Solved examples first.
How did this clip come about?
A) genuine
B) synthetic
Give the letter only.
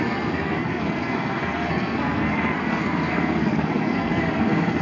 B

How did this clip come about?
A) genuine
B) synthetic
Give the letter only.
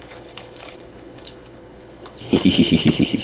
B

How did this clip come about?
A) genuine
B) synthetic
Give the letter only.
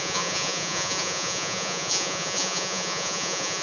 B